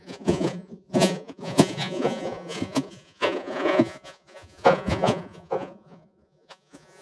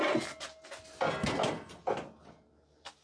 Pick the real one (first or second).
second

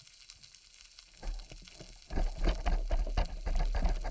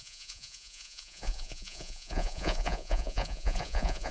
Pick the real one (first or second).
first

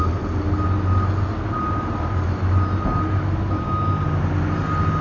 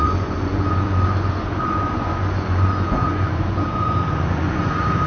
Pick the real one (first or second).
first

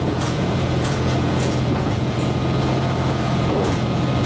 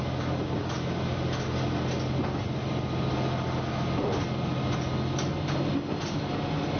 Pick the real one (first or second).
second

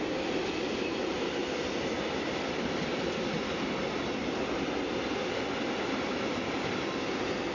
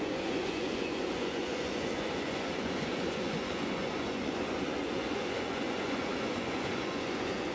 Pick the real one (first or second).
first